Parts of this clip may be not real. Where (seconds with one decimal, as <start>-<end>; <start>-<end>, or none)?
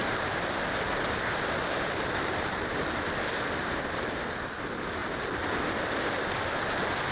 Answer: 0.8-5.0